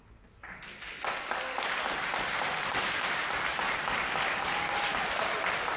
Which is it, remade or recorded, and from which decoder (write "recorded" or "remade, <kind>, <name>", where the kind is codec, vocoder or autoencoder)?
recorded